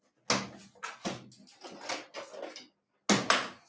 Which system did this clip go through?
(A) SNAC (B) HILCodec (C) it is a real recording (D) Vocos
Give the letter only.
C